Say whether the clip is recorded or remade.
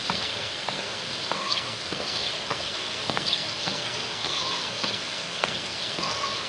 remade